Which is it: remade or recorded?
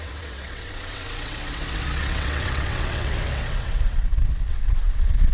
remade